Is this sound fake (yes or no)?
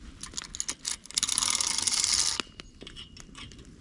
no